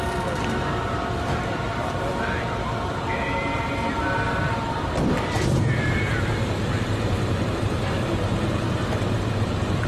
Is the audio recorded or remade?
remade